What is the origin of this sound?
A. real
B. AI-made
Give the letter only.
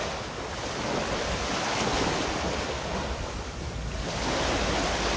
A